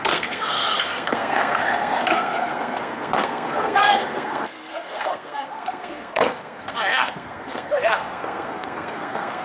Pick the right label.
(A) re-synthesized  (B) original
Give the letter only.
A